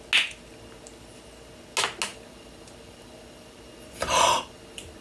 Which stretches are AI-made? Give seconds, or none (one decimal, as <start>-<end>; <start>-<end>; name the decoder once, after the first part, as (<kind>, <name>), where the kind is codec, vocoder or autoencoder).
2.1-5.0 (vocoder, BigVGAN v2)